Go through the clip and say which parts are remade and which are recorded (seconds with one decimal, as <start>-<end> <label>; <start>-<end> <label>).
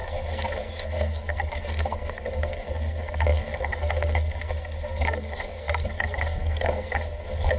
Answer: 0.0-7.6 remade